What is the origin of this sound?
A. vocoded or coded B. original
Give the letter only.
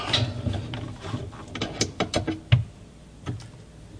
B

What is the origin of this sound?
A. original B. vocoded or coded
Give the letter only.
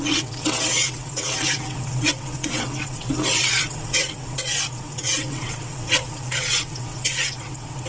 B